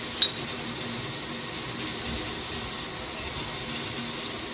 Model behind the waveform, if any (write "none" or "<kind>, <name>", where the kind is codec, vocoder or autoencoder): none